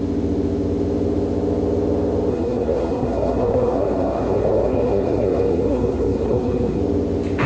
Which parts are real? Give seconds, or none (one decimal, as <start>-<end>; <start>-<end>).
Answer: 0.0-2.3; 6.8-7.5